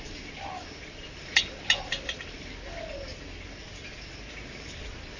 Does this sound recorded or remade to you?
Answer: recorded